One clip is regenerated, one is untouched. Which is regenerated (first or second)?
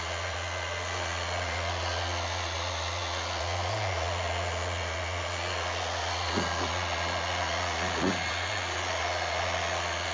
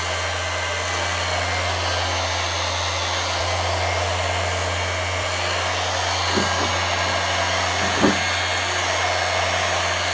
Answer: first